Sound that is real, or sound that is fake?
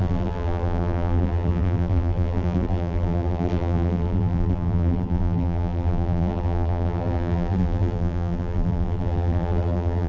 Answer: fake